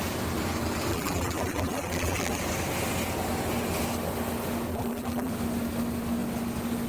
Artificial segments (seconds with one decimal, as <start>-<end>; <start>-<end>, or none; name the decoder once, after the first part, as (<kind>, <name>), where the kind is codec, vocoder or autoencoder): 0.9-2.4 (vocoder, BigVGAN v2); 4.7-5.3